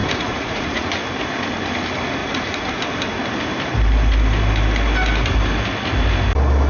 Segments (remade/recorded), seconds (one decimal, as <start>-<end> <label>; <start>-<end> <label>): 0.0-0.9 remade; 0.9-2.2 recorded; 2.2-2.8 remade; 2.8-6.7 recorded